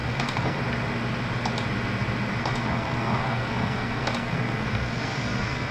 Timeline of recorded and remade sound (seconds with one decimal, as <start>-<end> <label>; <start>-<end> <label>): 0.0-0.6 remade; 0.6-2.4 recorded; 2.4-5.7 remade